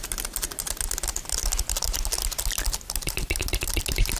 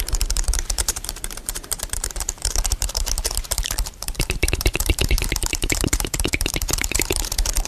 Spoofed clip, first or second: second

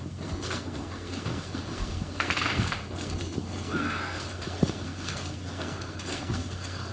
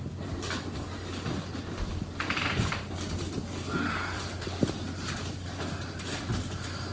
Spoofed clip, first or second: first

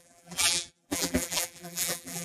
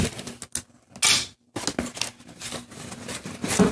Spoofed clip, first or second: first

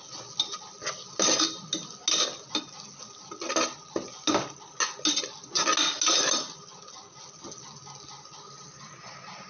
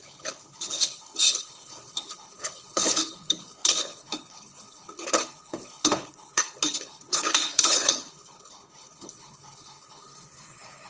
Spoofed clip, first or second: second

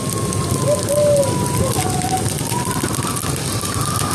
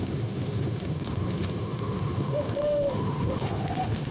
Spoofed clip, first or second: second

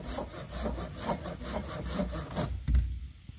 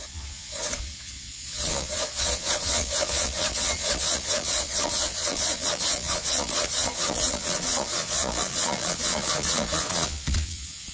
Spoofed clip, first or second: second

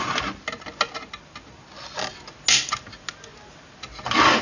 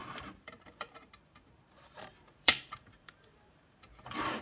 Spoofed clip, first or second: second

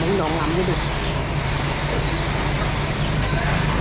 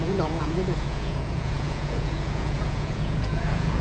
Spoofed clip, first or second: second